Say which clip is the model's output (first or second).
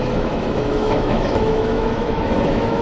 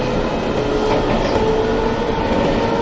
first